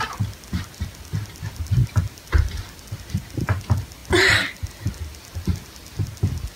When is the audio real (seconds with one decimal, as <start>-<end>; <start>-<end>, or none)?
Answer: 0.0-6.6

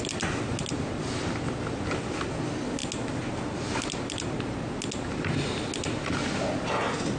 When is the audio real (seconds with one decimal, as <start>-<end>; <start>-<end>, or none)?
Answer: 0.0-7.2

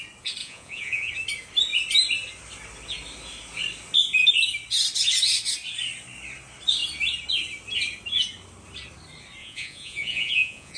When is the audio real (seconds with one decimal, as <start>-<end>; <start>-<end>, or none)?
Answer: 0.0-0.4; 1.1-9.4

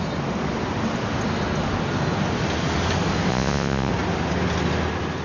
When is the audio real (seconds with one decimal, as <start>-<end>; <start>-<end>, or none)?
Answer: 0.0-3.3; 3.9-5.2

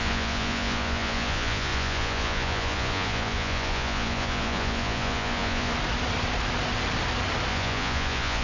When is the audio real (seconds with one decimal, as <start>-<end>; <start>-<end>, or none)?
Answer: 5.7-7.5